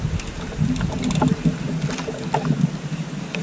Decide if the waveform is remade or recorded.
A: recorded